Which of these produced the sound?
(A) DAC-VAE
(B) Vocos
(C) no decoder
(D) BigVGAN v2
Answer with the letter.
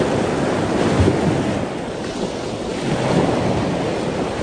C